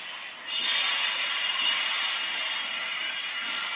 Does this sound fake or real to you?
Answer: real